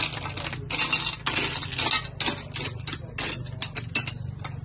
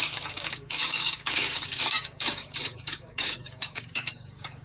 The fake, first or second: second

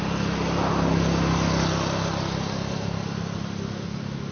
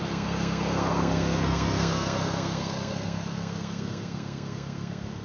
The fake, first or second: second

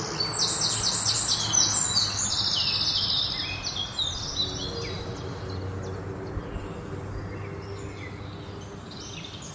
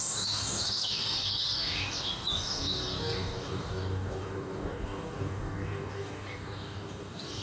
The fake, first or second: second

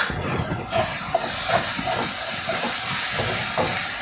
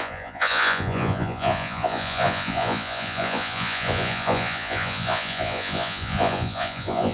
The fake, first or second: second